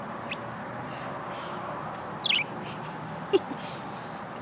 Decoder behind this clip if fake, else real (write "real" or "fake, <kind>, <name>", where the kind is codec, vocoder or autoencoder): real